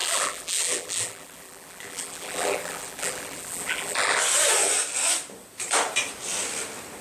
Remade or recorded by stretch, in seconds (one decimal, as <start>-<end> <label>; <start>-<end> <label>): 0.0-4.2 remade; 4.2-7.0 recorded